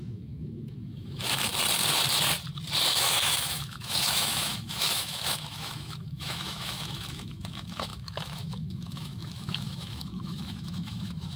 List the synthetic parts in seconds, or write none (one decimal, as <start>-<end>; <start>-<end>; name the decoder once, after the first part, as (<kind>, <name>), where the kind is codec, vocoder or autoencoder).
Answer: 0.0-1.5 (autoencoder, DAC-VAE); 2.9-11.4